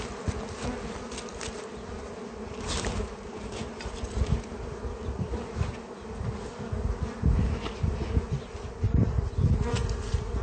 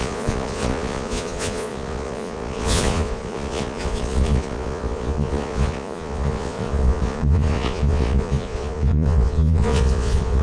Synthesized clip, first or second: second